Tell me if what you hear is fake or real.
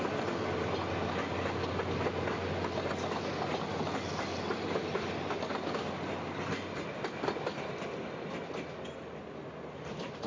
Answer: real